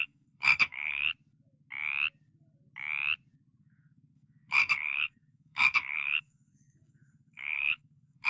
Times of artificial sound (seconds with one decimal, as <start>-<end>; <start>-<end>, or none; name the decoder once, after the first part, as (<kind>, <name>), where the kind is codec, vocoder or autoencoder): 0.0-1.1 (codec, SNAC); 3.6-8.3